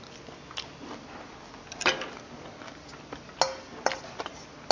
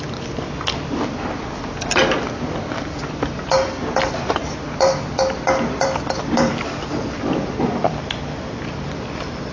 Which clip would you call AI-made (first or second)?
second